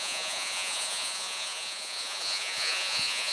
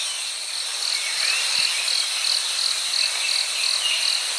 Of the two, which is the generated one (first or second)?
first